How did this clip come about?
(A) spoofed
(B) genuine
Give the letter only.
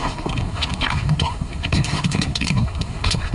A